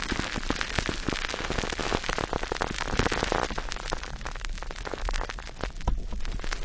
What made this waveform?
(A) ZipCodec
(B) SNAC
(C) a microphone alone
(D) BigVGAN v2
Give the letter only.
C